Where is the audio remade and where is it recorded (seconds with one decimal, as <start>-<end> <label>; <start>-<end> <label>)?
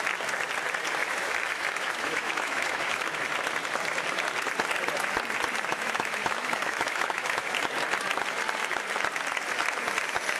0.0-1.0 recorded; 1.0-3.3 remade; 3.3-5.7 recorded; 5.7-7.6 remade; 7.6-10.4 recorded